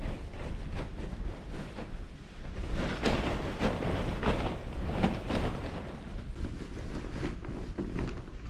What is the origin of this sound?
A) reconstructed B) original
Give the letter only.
B